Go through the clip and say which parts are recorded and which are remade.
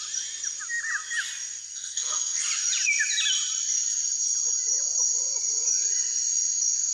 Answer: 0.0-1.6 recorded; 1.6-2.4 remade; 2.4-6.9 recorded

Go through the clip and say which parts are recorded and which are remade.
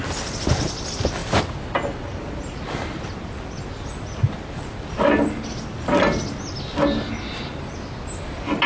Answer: 0.0-8.7 recorded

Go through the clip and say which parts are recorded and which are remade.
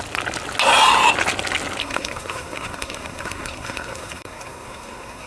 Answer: 0.0-1.8 recorded; 1.8-5.3 remade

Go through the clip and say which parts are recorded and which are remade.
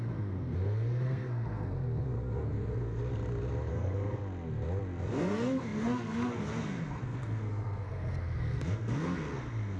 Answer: 0.0-3.0 remade; 3.0-3.7 recorded; 3.7-4.2 remade; 4.2-5.1 recorded; 5.1-9.8 remade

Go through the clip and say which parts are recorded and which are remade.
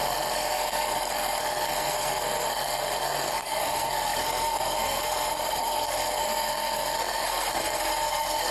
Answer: 0.0-8.5 remade